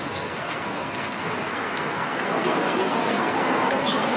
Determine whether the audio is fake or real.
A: fake